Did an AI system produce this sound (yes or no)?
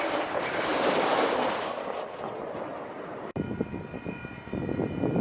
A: yes